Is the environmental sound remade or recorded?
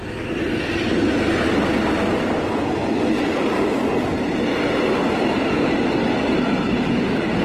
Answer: recorded